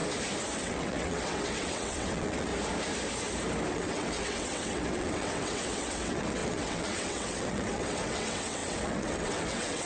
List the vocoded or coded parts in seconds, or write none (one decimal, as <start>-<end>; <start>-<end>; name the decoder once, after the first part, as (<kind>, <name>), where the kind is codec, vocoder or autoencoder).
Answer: 0.6-2.5 (vocoder, WaveNeXt); 3.7-9.9